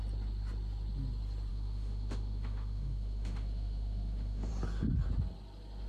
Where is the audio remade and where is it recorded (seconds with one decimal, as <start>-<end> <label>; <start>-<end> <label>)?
0.0-1.5 recorded; 1.5-4.5 remade; 4.5-5.9 recorded